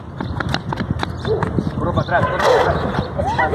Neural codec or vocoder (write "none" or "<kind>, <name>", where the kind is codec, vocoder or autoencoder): none